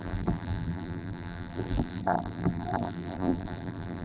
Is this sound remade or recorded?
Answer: remade